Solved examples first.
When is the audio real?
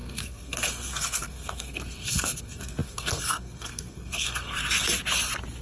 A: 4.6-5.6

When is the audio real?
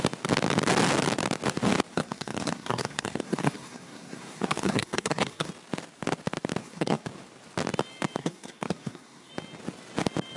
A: 0.0-1.9; 5.5-6.6; 7.1-8.2; 9.3-10.4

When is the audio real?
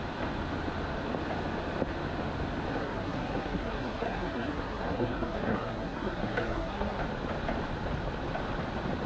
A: 0.0-2.7; 7.0-9.1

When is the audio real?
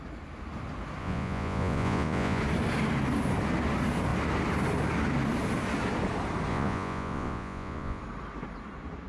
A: 0.0-1.0; 2.4-6.5; 8.0-9.1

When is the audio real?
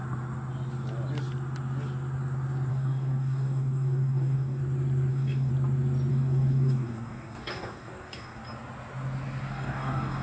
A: 0.0-2.7; 4.6-5.1; 5.5-6.1; 8.4-9.5